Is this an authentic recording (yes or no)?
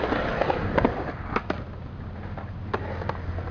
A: yes